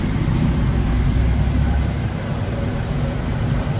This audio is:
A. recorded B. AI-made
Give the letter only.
B